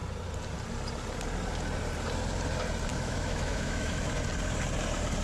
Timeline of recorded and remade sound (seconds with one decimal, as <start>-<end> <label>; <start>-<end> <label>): 0.0-2.9 recorded; 2.9-4.1 remade; 4.1-5.2 recorded